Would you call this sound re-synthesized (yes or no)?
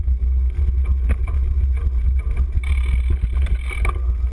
no